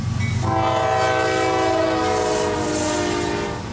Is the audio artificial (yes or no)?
no